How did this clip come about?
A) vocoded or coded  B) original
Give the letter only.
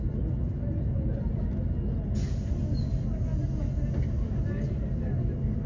B